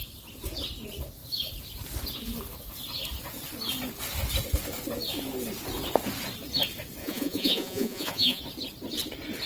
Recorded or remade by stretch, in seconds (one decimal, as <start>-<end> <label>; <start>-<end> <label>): 0.0-7.0 recorded; 7.0-8.4 remade; 8.4-9.5 recorded